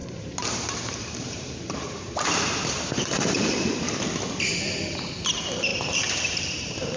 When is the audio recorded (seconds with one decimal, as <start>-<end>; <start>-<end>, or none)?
3.9-5.7